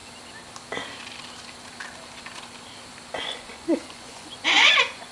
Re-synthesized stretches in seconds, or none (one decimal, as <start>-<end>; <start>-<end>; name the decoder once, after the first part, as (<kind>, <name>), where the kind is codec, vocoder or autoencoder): 3.1-5.1 (vocoder, Vocos)